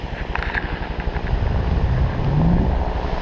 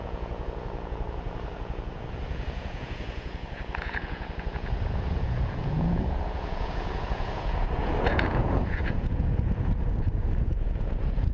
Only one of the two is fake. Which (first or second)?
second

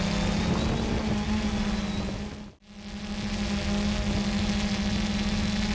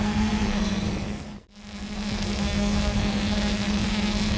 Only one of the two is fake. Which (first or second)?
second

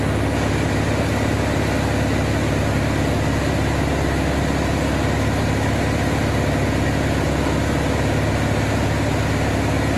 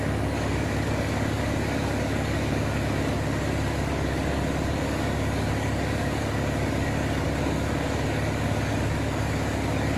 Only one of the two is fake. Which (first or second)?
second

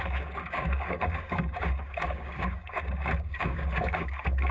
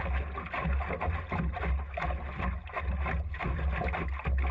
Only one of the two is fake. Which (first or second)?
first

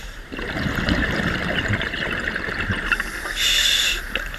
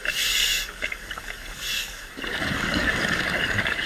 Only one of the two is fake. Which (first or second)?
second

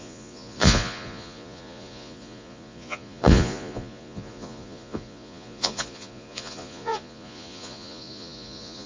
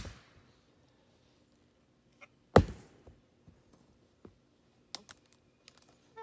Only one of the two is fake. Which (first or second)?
first